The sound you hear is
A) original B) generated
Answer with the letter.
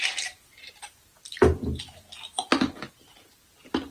A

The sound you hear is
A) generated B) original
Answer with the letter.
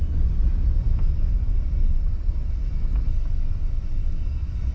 B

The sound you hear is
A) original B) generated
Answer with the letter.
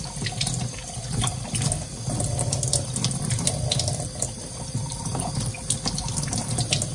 B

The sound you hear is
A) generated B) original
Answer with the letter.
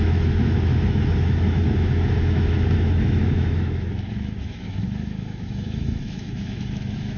A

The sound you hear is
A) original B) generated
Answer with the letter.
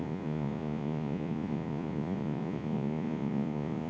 B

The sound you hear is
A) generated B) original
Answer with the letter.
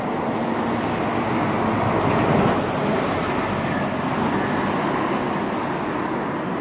B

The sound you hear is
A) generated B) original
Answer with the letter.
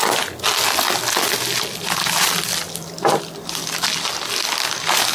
B